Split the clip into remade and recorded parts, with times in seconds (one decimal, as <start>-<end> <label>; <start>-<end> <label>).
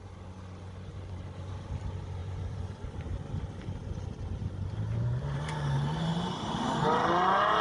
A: 0.0-2.2 recorded; 2.2-2.9 remade; 2.9-7.6 recorded